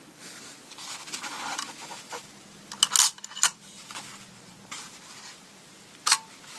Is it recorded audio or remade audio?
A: recorded